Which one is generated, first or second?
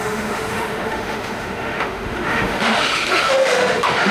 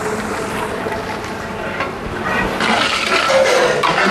first